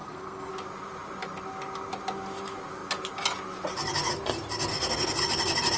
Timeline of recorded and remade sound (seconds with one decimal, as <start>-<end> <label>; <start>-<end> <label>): 0.0-0.5 remade; 0.5-4.7 recorded; 4.7-5.2 remade; 5.2-5.8 recorded